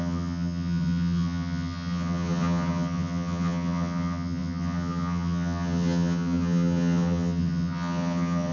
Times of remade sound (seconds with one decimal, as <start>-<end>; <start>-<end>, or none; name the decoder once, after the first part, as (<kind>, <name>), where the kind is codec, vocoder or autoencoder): 0.0-8.5 (vocoder, HiFi-GAN)